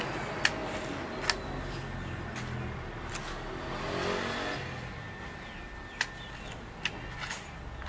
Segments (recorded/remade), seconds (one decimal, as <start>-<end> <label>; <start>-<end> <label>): 0.0-7.9 recorded